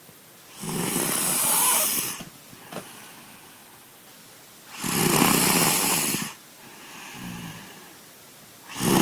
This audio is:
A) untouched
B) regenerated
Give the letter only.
A